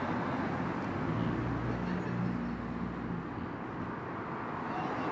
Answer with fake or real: real